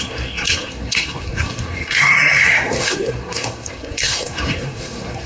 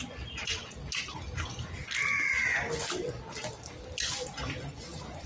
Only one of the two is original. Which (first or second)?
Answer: second